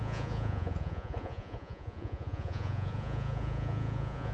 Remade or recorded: remade